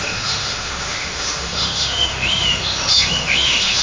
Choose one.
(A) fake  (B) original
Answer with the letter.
A